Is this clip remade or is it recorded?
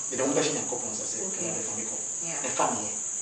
remade